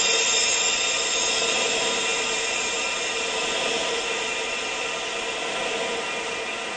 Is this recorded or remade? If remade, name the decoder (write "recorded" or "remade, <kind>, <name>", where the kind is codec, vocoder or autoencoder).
recorded